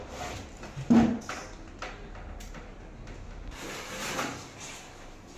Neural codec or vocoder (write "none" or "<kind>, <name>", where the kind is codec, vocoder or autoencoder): none